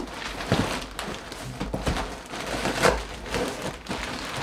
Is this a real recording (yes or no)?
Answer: yes